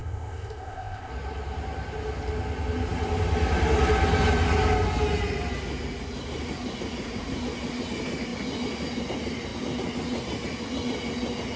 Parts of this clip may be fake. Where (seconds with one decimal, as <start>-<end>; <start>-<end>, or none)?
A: 0.0-1.1